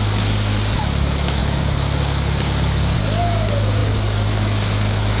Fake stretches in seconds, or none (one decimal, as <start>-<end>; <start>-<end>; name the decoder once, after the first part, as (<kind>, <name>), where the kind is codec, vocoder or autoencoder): 0.0-5.2 (codec, DAC)